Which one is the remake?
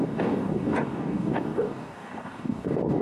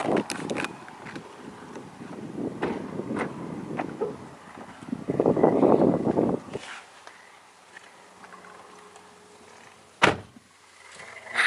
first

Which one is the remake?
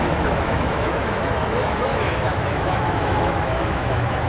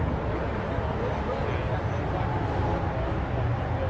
first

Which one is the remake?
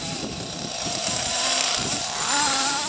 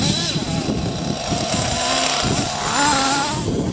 first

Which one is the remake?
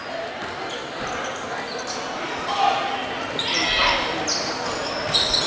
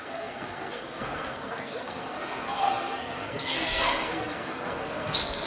second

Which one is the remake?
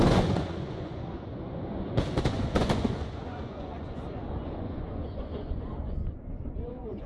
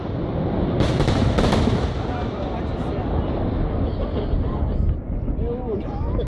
first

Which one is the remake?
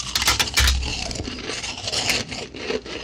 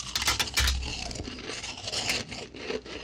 first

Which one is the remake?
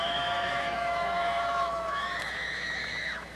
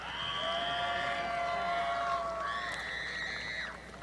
first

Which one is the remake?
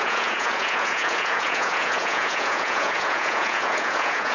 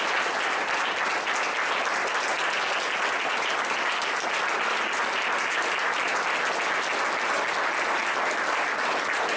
first